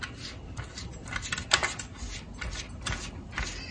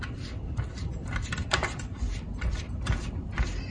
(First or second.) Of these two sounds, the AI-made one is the second